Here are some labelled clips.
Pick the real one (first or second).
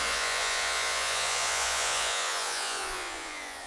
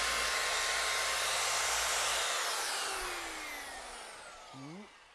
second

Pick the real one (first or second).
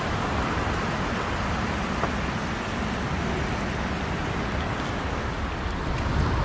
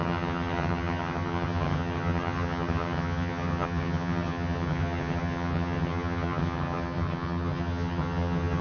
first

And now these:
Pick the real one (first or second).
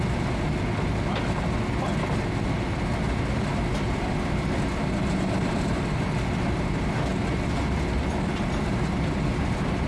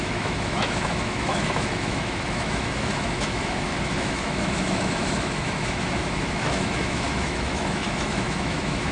first